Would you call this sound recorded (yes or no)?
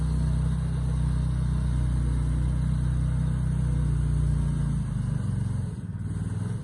yes